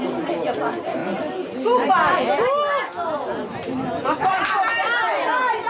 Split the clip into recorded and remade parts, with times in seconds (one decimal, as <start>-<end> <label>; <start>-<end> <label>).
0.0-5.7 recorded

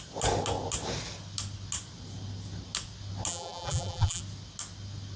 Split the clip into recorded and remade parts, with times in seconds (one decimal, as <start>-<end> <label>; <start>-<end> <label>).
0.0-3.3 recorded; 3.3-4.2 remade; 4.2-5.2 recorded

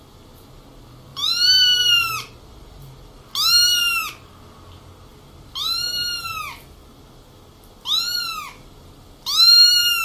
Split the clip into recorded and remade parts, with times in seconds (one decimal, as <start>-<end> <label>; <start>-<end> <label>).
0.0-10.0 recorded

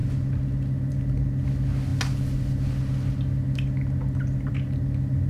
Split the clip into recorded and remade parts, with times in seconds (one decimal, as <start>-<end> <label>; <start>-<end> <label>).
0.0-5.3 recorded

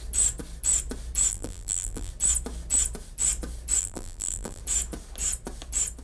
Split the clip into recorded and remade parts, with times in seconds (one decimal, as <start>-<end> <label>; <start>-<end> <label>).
0.0-1.3 recorded; 1.3-2.1 remade; 2.1-3.8 recorded; 3.8-4.6 remade; 4.6-6.0 recorded

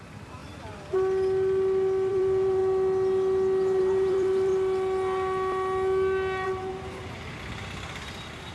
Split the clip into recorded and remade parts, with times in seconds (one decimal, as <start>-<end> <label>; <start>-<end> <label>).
0.0-0.4 remade; 0.4-2.1 recorded; 2.1-2.6 remade; 2.6-3.8 recorded; 3.8-4.5 remade; 4.5-6.7 recorded; 6.7-8.5 remade